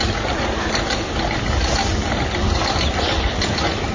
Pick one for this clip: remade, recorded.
recorded